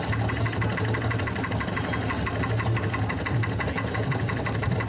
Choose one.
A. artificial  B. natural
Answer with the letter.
B